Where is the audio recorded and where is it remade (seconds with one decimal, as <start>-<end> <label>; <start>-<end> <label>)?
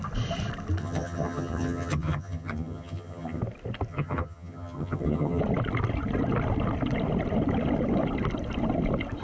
0.0-0.8 recorded; 0.8-3.4 remade; 3.4-3.9 recorded; 3.9-5.4 remade; 5.4-9.2 recorded